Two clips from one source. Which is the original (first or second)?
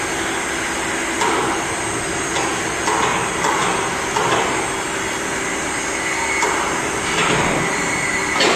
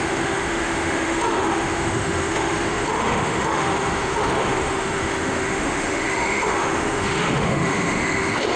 first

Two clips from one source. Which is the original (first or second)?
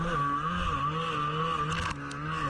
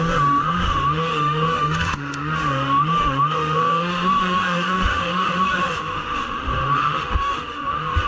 first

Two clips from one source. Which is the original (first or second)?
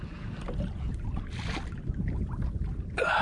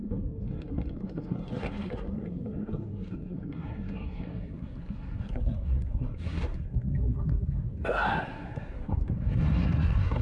first